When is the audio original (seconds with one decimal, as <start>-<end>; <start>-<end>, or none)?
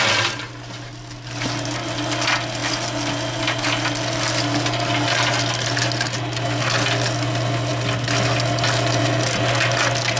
0.0-10.2